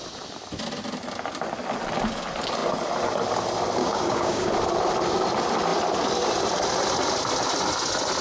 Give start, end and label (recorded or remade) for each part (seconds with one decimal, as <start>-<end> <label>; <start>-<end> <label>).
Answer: 0.0-3.8 recorded; 3.8-4.5 remade; 4.5-8.2 recorded